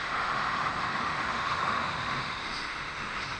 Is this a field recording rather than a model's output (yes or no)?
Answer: no